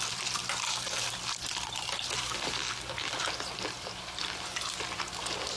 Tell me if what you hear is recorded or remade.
recorded